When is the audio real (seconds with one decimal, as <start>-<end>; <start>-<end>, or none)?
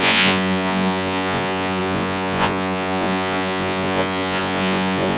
none